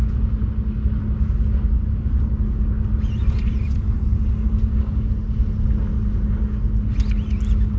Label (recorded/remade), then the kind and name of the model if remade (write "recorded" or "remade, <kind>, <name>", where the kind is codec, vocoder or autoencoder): recorded